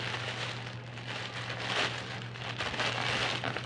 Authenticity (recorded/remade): recorded